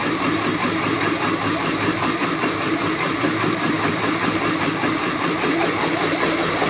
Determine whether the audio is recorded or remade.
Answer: remade